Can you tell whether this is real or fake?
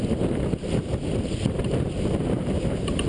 fake